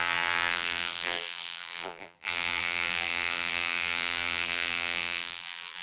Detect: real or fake fake